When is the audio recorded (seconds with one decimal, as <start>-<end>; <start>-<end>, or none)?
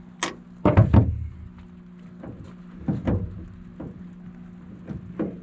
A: 0.0-5.4